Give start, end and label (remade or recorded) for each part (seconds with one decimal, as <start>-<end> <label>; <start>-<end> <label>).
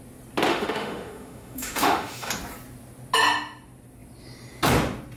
0.0-0.5 recorded; 0.5-2.3 remade; 2.3-5.2 recorded